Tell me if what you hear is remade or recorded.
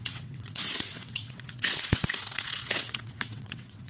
remade